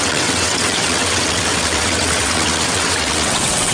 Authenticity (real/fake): fake